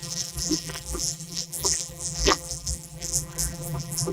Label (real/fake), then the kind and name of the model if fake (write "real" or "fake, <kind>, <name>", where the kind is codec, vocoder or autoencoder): fake, vocoder, BigVGAN v2